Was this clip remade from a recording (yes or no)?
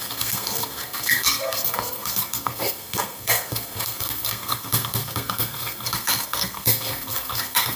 yes